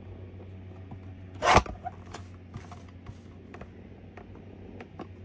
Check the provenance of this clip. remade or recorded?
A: recorded